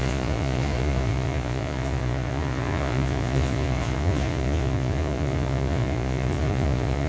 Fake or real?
fake